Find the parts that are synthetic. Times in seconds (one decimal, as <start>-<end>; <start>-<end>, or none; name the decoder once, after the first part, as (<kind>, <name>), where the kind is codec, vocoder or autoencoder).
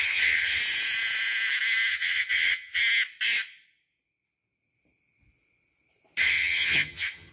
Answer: 0.0-0.6 (vocoder, HiFi-GAN); 1.9-2.8; 6.2-7.3